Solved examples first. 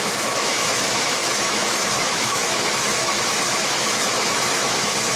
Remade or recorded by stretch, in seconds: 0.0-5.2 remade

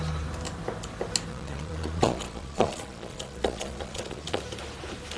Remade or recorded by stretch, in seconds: 0.0-1.3 recorded; 1.3-4.4 remade; 4.4-5.2 recorded

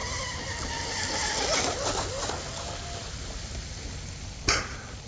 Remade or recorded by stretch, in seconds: 0.0-5.1 recorded

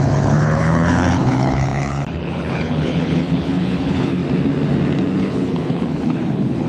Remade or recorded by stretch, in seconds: 0.0-4.2 remade; 4.2-5.2 recorded; 5.2-6.7 remade

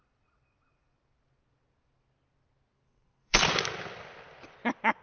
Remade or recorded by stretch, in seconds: 0.0-2.7 recorded; 2.7-3.4 remade; 3.4-5.0 recorded

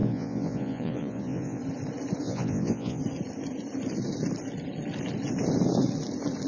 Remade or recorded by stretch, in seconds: 0.0-1.6 remade; 1.6-2.2 recorded; 2.2-3.0 remade; 3.0-6.5 recorded